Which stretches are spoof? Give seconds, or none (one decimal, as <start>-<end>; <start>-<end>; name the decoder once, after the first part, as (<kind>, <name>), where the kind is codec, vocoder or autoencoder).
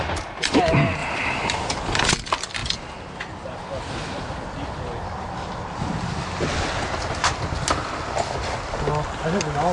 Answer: 1.0-2.1 (vocoder, BigVGAN v2)